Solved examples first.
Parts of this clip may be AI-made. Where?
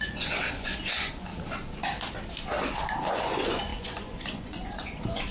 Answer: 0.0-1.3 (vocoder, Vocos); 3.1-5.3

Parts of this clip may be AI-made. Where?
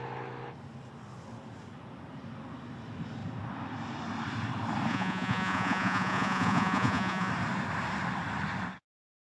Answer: 4.9-7.3 (vocoder, Vocos)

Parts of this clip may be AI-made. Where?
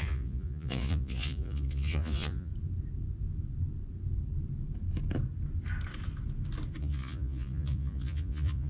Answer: 0.0-2.5 (vocoder, Vocos); 6.8-8.7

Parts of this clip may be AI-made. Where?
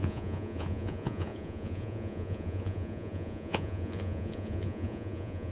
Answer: 0.0-5.5 (vocoder, Vocos)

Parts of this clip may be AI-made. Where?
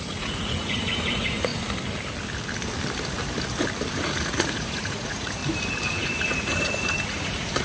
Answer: 0.0-1.5 (vocoder, Vocos); 3.9-5.4; 5.9-7.6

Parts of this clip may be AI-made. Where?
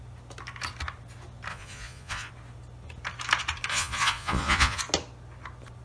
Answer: 1.5-2.3 (vocoder, Vocos); 3.7-4.8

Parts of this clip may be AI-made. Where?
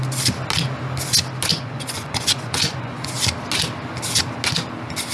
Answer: 1.5-3.1 (vocoder, Vocos)